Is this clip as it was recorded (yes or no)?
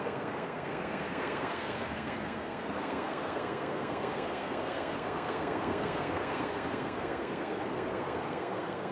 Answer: no